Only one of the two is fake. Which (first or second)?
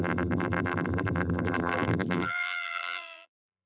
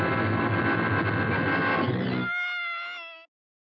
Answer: first